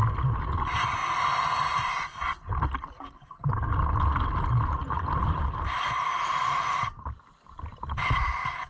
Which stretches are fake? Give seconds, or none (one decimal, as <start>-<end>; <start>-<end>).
4.8-5.4